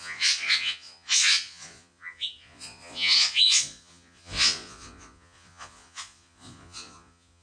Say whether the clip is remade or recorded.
remade